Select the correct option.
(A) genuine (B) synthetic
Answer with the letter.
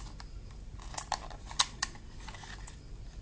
A